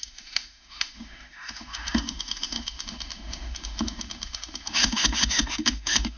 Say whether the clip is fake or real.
fake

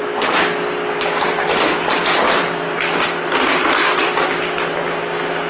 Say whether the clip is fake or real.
real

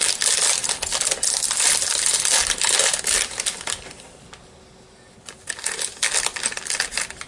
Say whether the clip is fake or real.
real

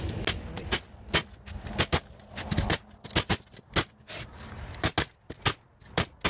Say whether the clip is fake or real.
real